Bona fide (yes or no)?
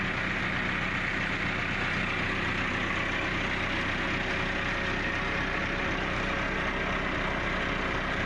yes